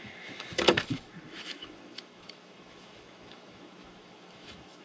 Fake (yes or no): yes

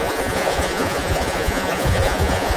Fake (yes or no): yes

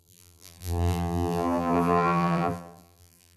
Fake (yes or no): yes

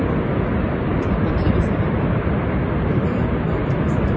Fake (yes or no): no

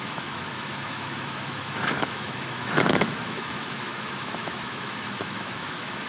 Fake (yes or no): yes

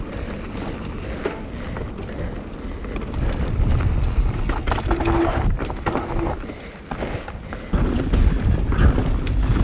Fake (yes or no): no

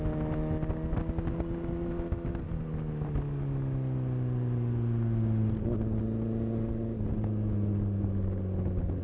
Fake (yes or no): no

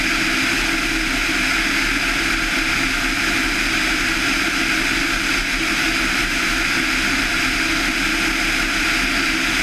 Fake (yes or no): no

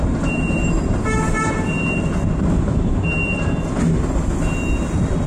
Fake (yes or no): no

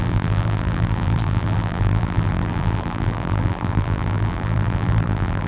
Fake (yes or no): yes